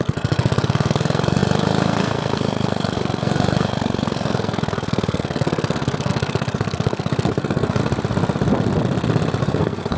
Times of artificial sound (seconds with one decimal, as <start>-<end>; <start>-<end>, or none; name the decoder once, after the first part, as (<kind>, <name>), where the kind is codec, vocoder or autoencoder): 0.0-7.8 (codec, SNAC); 9.4-10.0